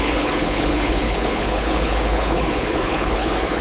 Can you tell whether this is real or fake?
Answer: fake